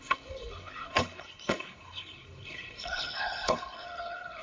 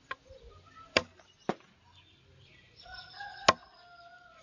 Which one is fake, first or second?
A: first